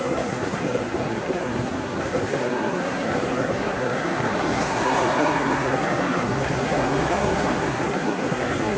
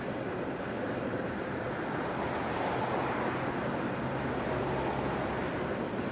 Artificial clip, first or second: first